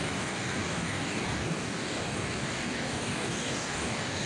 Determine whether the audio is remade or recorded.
remade